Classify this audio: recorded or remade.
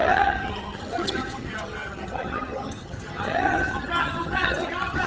remade